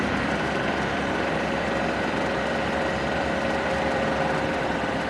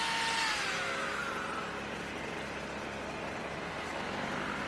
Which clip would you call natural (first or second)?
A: second